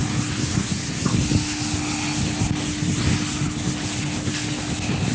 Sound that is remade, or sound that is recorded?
recorded